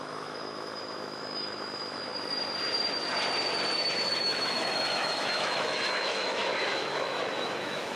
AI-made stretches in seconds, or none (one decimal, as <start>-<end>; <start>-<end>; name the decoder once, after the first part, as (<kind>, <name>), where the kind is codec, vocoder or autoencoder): 0.0-2.1 (autoencoder, DAC-VAE); 4.2-8.0